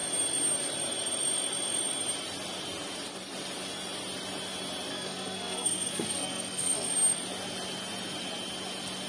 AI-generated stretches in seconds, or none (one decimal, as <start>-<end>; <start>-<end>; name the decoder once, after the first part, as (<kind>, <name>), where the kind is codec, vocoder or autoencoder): 4.9-6.9 (codec, SNAC)